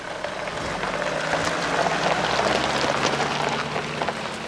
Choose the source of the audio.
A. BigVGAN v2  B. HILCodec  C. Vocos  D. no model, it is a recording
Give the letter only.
D